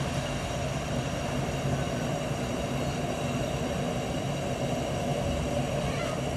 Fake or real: real